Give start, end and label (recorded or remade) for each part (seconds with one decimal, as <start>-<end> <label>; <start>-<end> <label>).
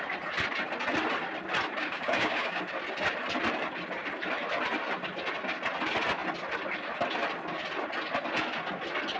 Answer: 0.0-1.8 recorded; 1.8-2.6 remade; 2.6-9.2 recorded